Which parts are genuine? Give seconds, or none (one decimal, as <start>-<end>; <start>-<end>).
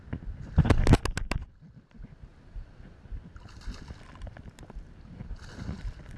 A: 0.0-6.2